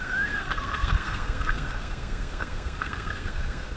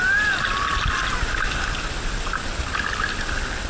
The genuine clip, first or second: second